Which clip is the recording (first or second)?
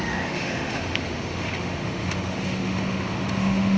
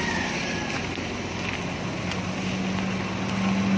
second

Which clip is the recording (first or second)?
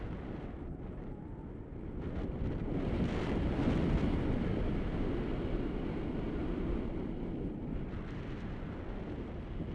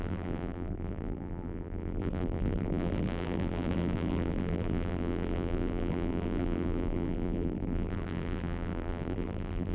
first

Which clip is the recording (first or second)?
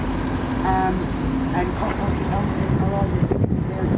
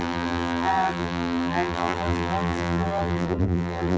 first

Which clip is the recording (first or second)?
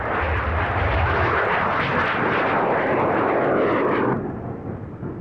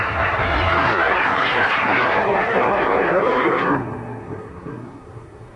first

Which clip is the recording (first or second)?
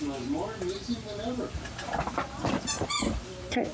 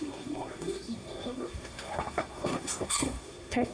first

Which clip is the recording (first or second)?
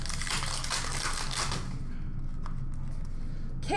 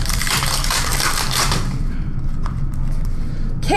first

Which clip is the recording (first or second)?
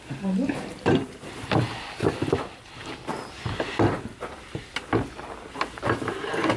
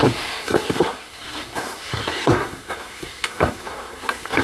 first